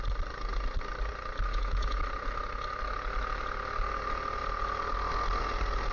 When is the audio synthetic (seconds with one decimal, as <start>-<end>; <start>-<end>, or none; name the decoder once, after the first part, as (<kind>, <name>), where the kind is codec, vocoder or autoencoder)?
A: 1.5-2.0 (autoencoder, DAC-VAE)

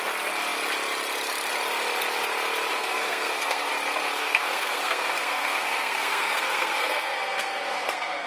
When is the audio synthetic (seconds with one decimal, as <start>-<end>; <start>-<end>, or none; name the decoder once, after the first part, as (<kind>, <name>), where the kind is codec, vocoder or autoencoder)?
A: 2.7-3.7 (codec, SNAC); 4.2-8.3

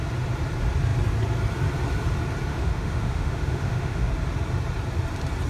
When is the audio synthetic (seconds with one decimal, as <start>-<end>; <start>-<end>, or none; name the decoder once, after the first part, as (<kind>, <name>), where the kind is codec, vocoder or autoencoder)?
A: 2.5-4.1 (autoencoder, DAC-VAE)

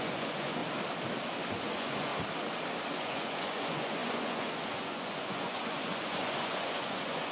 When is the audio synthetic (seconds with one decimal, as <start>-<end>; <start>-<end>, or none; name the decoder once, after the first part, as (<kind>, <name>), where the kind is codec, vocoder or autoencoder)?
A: 0.0-0.6 (vocoder, Vocos); 1.5-2.1; 3.0-7.3

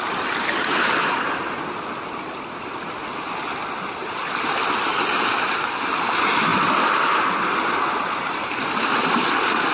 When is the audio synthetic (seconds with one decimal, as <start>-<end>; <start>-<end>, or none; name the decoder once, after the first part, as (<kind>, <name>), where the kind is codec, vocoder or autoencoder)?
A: none

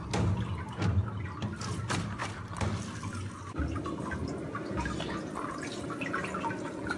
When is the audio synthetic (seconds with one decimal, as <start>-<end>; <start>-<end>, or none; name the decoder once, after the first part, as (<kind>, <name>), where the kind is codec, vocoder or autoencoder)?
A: none